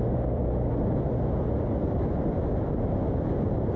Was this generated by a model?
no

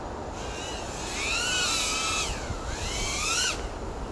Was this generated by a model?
no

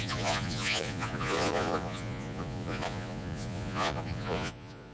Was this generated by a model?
yes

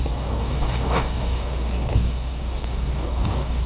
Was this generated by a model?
yes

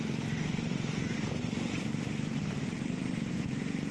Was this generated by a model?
yes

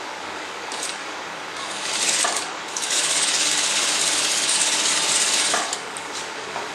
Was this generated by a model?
yes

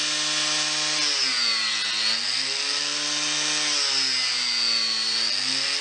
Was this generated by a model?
no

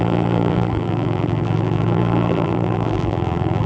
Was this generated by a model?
yes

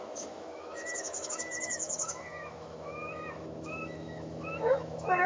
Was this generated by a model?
yes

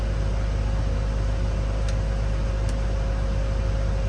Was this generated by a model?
no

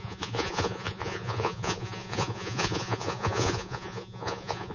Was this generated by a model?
yes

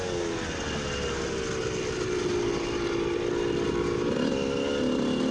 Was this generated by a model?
no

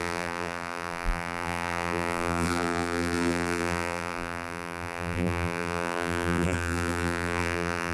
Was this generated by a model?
yes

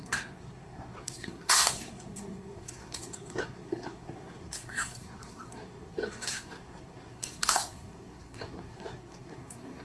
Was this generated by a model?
yes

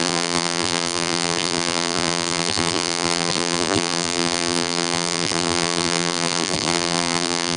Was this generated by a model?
yes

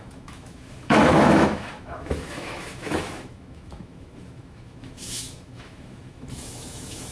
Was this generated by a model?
yes